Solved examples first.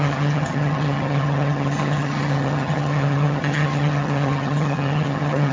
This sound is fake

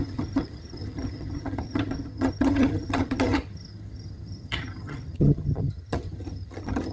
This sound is fake